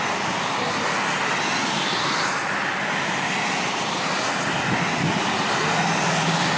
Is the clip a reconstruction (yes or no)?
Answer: no